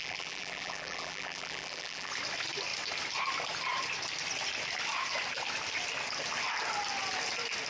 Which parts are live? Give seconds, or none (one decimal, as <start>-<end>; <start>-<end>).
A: 2.1-7.7